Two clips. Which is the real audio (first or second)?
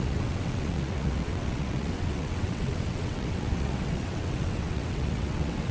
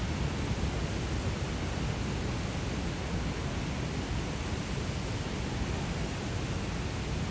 second